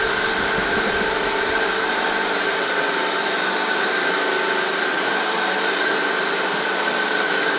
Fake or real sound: real